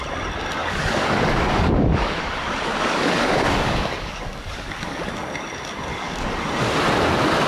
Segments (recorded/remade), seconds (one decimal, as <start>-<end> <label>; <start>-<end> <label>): 0.0-0.6 recorded; 0.6-5.1 remade; 5.1-5.9 recorded; 5.9-6.4 remade; 6.4-7.5 recorded